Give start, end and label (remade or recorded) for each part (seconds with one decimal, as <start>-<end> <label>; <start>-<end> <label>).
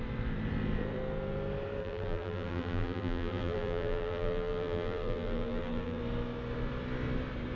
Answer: 0.0-1.8 recorded; 1.8-6.0 remade; 6.0-7.6 recorded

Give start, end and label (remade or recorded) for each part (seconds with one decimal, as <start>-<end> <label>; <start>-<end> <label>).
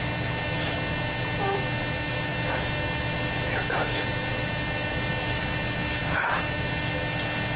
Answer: 0.0-7.6 recorded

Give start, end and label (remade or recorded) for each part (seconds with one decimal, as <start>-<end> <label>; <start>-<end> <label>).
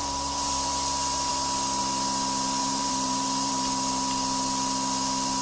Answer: 0.0-0.7 remade; 0.7-2.6 recorded; 2.6-3.5 remade; 3.5-5.4 recorded